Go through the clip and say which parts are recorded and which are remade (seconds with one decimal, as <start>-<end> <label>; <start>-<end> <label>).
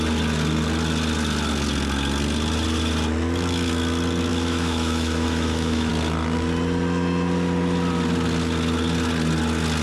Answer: 0.0-4.3 recorded; 4.3-5.9 remade; 5.9-9.8 recorded